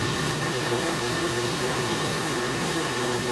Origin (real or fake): fake